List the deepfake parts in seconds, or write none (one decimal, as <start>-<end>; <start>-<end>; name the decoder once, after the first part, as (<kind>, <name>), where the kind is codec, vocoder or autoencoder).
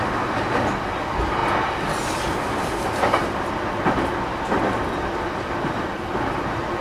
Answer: none